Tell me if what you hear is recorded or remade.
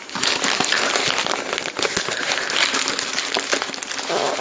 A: recorded